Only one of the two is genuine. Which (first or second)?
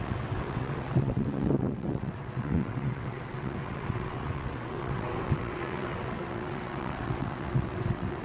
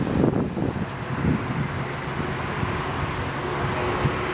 second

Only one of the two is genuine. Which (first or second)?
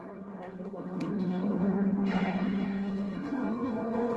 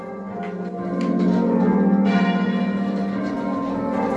second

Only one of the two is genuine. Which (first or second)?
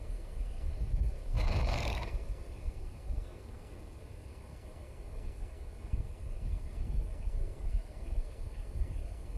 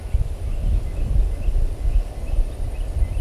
second